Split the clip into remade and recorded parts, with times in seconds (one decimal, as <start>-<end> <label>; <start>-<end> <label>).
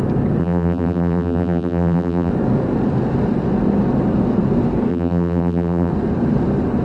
0.0-0.4 recorded; 0.4-2.3 remade; 2.3-4.9 recorded; 4.9-5.9 remade; 5.9-6.8 recorded